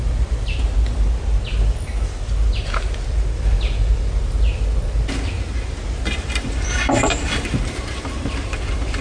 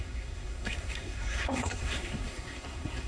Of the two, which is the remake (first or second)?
second